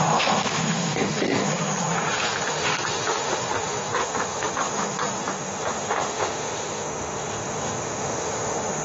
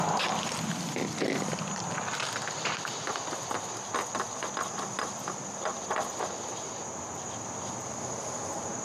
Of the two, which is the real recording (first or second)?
second